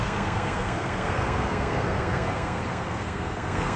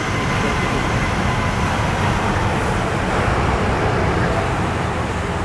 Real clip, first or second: second